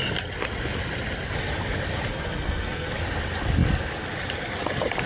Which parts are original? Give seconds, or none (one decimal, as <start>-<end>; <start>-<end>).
0.0-2.1; 2.9-5.1